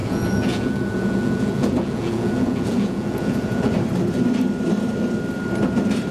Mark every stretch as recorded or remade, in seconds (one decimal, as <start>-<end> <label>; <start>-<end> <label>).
0.0-3.7 remade; 3.7-6.1 recorded